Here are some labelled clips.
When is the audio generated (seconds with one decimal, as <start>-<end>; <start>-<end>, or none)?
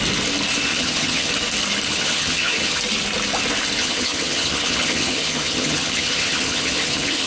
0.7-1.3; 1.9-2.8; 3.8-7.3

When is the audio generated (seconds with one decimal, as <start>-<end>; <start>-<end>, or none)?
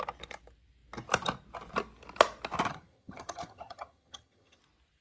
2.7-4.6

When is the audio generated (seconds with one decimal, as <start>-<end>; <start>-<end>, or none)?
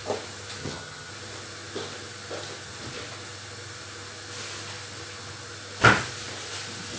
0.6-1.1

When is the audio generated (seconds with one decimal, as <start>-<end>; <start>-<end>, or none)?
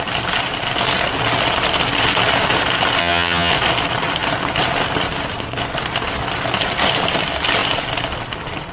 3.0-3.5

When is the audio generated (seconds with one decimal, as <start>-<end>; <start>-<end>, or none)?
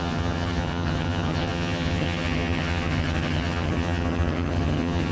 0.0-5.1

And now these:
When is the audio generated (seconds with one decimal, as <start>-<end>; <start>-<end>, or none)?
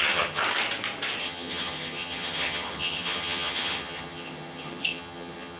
0.0-0.4; 1.2-5.6